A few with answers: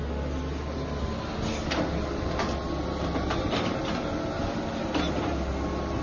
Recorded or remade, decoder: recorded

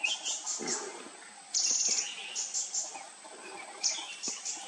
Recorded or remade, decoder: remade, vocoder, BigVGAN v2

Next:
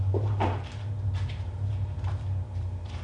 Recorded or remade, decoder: remade, vocoder, BigVGAN v2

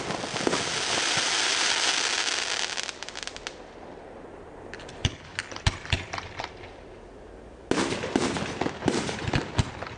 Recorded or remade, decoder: recorded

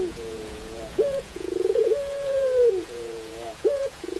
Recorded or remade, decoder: remade, vocoder, Vocos